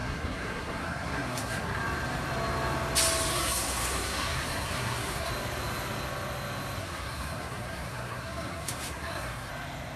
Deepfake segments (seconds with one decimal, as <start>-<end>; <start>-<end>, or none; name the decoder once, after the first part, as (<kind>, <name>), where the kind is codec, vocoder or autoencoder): 0.0-1.8 (codec, SNAC); 3.3-5.3; 6.8-9.5